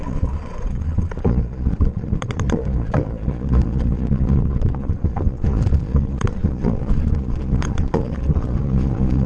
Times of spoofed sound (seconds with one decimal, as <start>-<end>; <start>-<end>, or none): 0.0-9.3